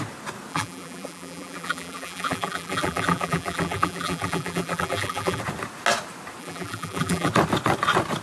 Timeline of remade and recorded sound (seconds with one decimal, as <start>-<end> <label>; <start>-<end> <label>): 0.0-0.5 recorded; 0.5-5.4 remade; 5.4-6.4 recorded; 6.4-7.3 remade; 7.3-8.2 recorded